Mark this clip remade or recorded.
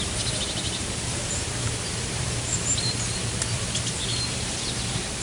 remade